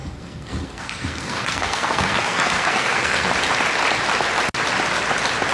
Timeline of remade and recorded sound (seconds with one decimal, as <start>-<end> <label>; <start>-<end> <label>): 0.0-3.3 remade; 3.3-5.5 recorded